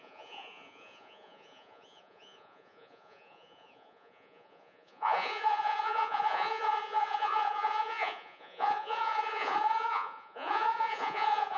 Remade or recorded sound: remade